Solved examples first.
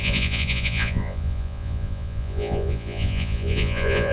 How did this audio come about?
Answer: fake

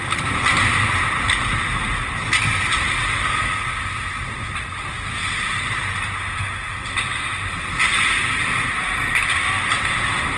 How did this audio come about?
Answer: real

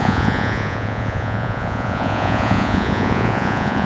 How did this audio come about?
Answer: fake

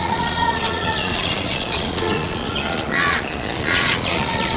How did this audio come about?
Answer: fake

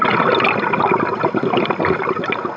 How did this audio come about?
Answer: real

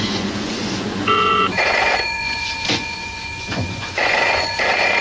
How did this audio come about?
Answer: fake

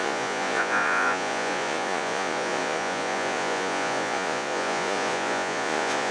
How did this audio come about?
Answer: fake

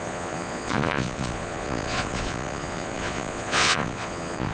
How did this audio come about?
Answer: fake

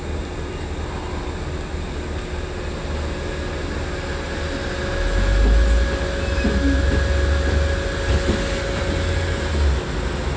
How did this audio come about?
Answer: real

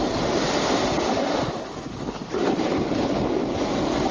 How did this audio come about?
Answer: real